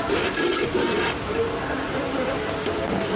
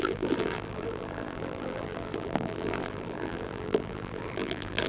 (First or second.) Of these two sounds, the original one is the first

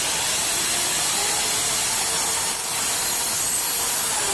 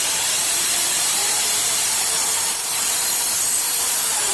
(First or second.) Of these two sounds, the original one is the first